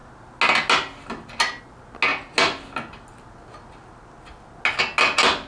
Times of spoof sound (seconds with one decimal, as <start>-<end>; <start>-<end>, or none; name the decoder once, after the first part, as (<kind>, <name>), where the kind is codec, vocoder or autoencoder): none